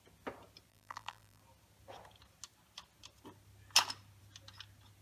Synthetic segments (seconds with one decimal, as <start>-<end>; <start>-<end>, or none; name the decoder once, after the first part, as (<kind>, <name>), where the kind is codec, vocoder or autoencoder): 0.7-1.4 (vocoder, BigVGAN v2)